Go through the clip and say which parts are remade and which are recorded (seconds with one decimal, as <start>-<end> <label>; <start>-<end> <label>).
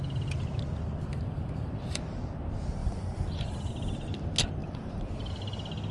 0.0-1.1 recorded; 1.1-2.3 remade; 2.3-2.8 recorded; 2.8-3.7 remade; 3.7-4.6 recorded; 4.6-5.3 remade; 5.3-5.9 recorded